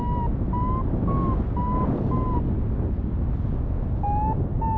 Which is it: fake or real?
real